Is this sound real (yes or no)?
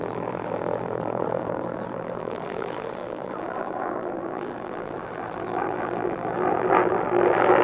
no